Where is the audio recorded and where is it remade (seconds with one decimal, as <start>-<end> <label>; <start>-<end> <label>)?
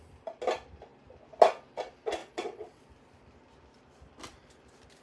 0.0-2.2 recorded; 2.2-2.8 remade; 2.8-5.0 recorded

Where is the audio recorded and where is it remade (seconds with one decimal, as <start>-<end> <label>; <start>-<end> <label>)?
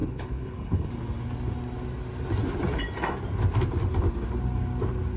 0.0-0.9 remade; 0.9-5.2 recorded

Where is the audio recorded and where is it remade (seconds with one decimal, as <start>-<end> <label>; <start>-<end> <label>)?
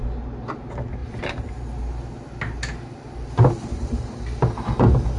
0.0-5.2 recorded